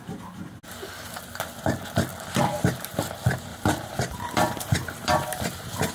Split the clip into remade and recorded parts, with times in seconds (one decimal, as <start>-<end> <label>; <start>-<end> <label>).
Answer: 0.0-2.4 recorded; 2.4-3.0 remade; 3.0-3.5 recorded; 3.5-5.9 remade